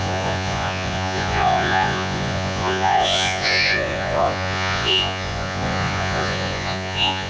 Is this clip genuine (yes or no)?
no